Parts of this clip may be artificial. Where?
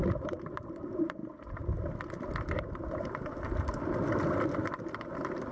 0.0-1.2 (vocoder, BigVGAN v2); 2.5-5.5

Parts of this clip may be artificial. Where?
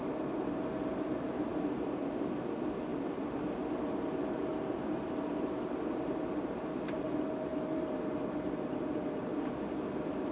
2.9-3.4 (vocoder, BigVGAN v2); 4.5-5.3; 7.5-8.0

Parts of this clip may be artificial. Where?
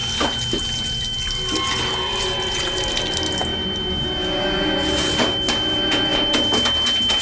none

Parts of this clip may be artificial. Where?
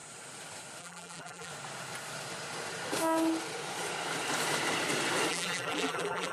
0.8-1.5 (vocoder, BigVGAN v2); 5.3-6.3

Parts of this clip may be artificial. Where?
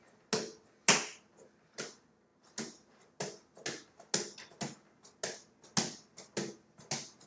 none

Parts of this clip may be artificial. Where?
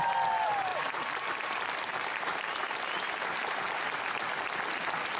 0.7-3.8 (vocoder, BigVGAN v2)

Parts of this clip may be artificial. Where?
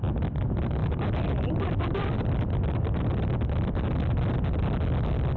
none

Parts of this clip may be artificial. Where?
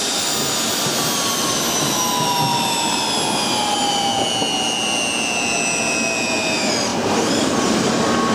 2.5-3.1 (vocoder, BigVGAN v2); 6.9-7.9